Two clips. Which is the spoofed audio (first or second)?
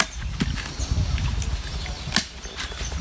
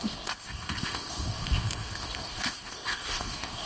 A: second